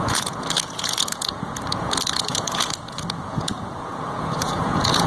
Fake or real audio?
fake